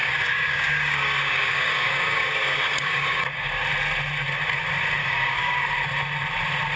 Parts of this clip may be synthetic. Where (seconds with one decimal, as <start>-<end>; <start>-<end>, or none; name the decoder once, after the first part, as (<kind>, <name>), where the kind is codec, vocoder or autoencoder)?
0.0-3.6 (codec, DAC); 5.0-5.7